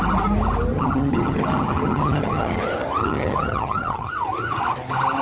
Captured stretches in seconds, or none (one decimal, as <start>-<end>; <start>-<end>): 0.0-0.7; 2.6-3.0; 4.1-5.2